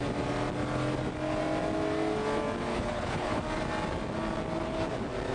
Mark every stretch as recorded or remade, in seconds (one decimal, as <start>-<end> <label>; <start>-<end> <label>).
0.0-2.7 recorded; 2.7-3.4 remade; 3.4-5.3 recorded